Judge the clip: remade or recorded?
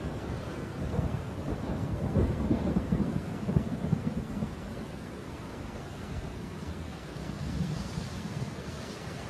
remade